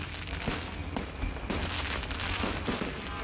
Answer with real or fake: real